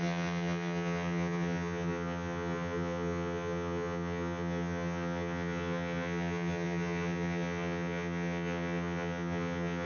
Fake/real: fake